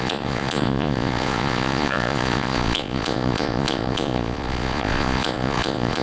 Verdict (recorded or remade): remade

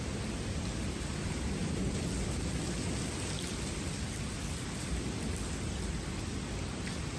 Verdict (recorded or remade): recorded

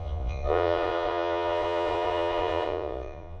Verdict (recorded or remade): remade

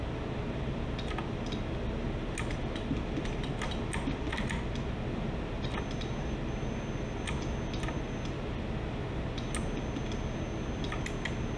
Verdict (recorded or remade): recorded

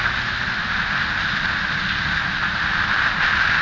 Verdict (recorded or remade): recorded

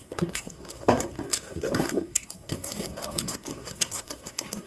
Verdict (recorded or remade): remade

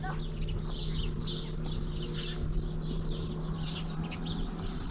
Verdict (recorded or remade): recorded